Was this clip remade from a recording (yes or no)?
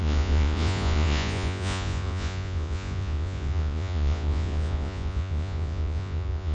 yes